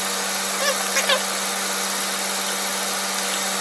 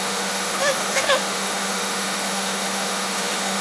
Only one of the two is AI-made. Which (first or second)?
second